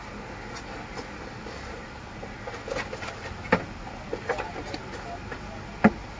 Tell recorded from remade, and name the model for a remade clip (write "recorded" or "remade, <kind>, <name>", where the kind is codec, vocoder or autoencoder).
recorded